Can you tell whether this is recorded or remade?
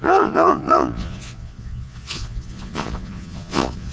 remade